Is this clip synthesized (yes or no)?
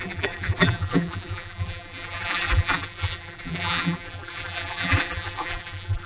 yes